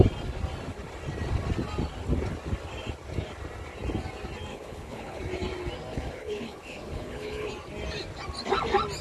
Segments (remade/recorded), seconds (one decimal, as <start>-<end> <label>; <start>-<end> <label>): 0.0-4.5 recorded; 4.5-5.2 remade; 5.2-5.9 recorded; 5.9-7.5 remade; 7.5-9.0 recorded